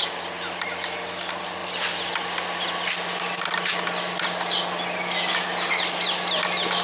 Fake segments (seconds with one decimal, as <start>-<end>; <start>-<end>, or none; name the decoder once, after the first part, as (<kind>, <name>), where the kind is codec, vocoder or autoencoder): none